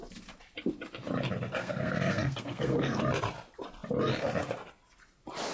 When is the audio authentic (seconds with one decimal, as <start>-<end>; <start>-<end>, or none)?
0.0-1.6; 3.0-5.5